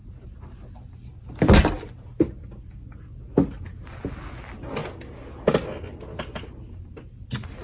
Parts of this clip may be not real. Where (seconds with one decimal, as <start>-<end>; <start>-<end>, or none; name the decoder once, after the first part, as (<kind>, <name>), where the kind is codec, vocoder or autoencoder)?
none